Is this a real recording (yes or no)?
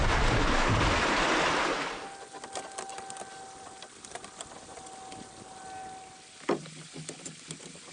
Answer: yes